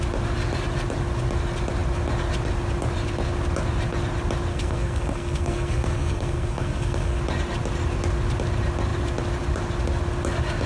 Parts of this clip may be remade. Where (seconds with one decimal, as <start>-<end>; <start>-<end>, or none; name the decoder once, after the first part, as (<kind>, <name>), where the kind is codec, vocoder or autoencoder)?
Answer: 4.5-7.2 (codec, SNAC)

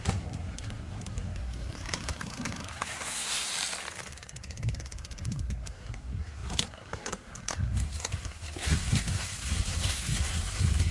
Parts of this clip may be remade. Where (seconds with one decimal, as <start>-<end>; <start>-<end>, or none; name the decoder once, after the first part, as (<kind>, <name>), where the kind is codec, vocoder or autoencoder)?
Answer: 0.0-3.5 (codec, SNAC); 4.1-10.9

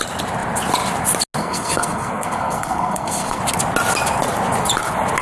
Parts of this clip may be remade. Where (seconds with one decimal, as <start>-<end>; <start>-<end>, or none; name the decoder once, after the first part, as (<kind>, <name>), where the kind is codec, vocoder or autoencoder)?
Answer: 1.4-3.4 (codec, SNAC)

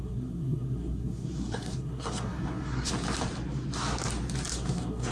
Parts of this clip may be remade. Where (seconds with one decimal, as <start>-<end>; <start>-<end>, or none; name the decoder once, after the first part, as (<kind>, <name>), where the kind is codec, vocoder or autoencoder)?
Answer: 0.0-2.9 (codec, SNAC); 4.5-5.1